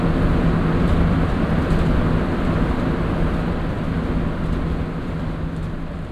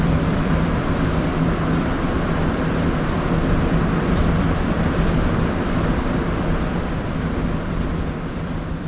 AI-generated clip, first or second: second